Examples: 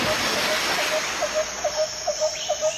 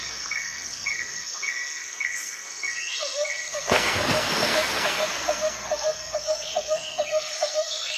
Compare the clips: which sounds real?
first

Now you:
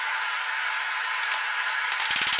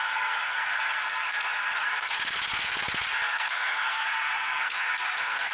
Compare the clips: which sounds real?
first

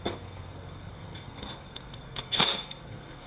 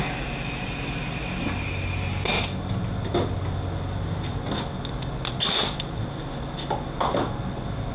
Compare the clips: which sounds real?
second